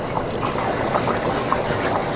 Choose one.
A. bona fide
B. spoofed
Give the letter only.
A